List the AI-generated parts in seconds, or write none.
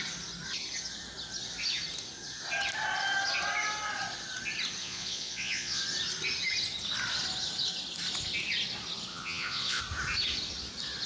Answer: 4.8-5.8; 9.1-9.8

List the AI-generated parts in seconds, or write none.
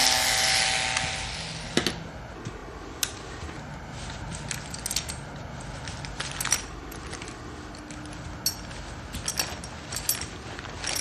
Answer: none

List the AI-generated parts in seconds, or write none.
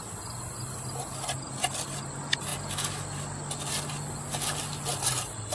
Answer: none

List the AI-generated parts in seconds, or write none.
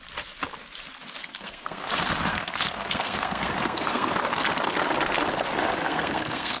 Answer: 1.2-1.9; 2.3-4.1; 5.8-6.6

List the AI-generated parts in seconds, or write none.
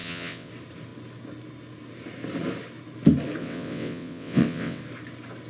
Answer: 0.0-0.5; 3.4-4.8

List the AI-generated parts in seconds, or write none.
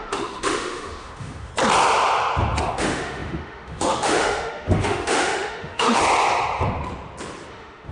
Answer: 0.0-1.5; 2.7-6.0; 7.5-7.9